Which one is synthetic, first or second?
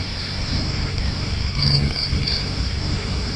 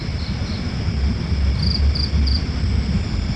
first